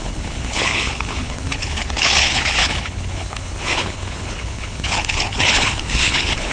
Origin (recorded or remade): remade